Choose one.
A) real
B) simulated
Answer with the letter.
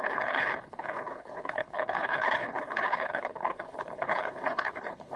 B